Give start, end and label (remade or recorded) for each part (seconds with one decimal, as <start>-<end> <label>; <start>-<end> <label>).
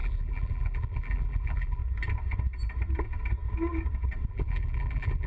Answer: 0.0-1.8 remade; 1.8-4.3 recorded; 4.3-5.3 remade